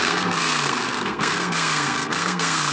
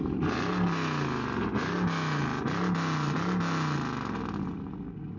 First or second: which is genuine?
second